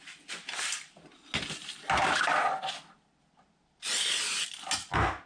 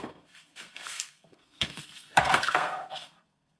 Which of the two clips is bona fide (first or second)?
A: first